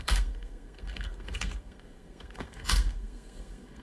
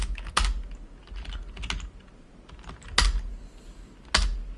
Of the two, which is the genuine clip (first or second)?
second